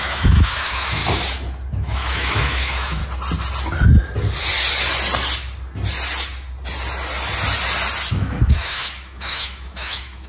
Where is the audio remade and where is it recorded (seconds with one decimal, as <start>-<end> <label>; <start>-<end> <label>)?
0.0-1.0 remade; 1.0-1.7 recorded; 1.7-3.0 remade; 3.0-8.1 recorded; 8.1-10.3 remade